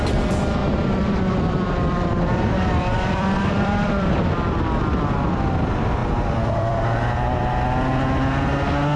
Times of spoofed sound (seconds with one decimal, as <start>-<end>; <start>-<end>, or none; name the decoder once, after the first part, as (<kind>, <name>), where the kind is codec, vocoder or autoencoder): 0.6-4.3 (vocoder, BigVGAN v2); 6.0-6.8